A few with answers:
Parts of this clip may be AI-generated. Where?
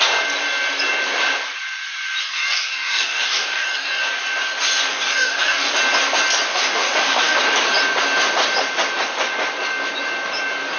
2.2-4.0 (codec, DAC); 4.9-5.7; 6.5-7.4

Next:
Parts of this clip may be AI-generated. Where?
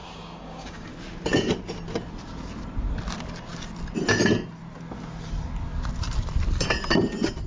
0.0-0.9 (codec, DAC)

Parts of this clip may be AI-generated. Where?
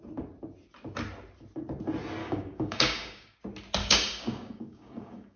2.2-3.4 (codec, DAC); 3.8-5.4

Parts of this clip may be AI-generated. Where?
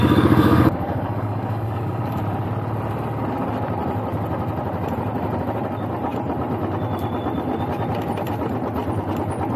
0.0-2.2 (codec, DAC)